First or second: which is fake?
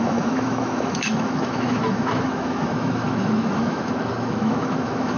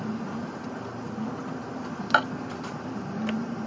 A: first